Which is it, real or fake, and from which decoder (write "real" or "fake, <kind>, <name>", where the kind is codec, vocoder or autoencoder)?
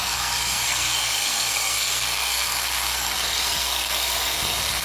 fake, codec, SNAC